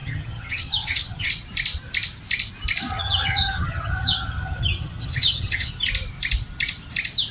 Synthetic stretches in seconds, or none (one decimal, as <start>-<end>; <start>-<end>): 0.0-1.3; 2.9-5.7